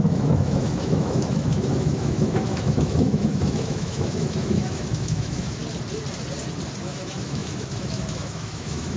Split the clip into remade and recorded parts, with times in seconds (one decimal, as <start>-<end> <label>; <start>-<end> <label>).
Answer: 0.0-5.6 remade; 5.6-6.8 recorded; 6.8-9.0 remade